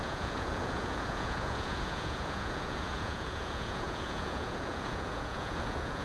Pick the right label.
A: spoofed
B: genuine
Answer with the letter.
A